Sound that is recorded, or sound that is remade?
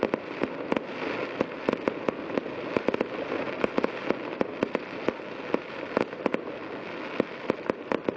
recorded